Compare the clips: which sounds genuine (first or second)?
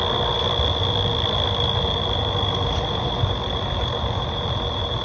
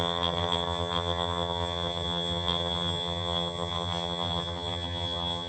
first